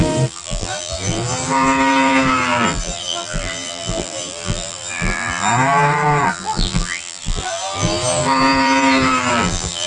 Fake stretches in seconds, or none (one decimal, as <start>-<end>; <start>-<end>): 0.0-9.9